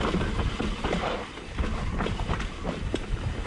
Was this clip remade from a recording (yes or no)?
no